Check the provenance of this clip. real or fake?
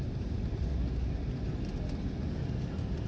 real